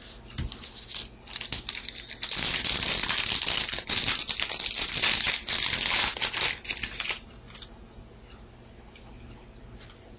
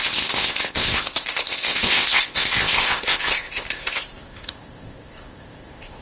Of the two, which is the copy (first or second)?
second